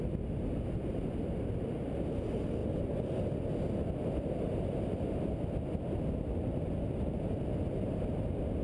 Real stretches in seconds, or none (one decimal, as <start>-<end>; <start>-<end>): 0.0-8.6